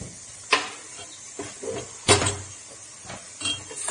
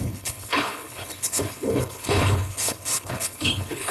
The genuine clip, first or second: first